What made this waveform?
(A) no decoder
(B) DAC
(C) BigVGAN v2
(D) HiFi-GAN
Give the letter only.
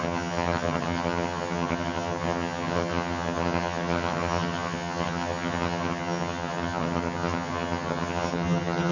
D